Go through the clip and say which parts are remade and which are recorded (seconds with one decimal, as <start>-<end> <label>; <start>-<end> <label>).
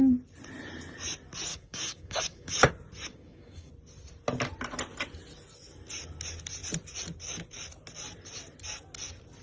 0.0-1.5 recorded; 1.5-2.7 remade; 2.7-3.1 recorded; 3.1-3.7 remade; 3.7-9.4 recorded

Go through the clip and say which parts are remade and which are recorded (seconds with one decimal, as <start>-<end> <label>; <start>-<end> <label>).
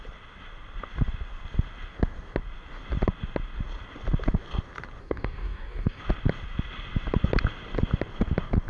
0.0-5.0 recorded; 5.0-6.0 remade; 6.0-8.7 recorded